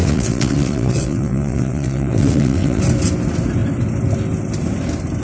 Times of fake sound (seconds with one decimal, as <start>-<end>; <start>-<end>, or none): 0.0-2.8